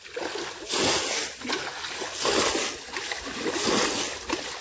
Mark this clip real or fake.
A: real